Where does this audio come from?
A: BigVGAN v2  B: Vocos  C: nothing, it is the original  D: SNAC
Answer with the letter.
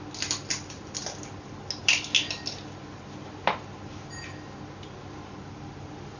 C